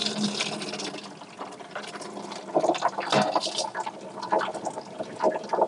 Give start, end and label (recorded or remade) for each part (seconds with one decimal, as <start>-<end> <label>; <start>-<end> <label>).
0.0-5.7 recorded